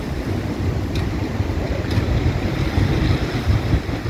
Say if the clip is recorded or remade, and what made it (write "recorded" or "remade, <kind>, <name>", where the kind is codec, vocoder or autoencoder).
recorded